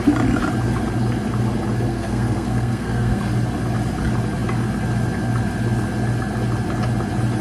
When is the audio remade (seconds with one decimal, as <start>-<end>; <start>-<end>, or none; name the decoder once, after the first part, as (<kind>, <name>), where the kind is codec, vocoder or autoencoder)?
1.9-3.2 (codec, SNAC)